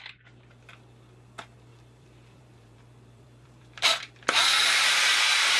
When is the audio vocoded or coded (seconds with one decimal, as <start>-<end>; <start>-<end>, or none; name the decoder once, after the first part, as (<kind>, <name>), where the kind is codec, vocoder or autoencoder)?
1.7-4.0 (vocoder, BigVGAN v2)